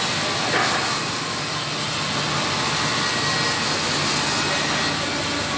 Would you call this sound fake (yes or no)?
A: no